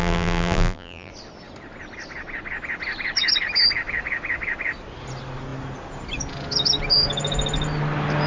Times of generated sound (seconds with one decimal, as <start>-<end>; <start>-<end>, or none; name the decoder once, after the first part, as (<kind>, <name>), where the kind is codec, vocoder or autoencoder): 0.0-1.1 (vocoder, BigVGAN v2)